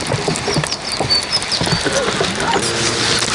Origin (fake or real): real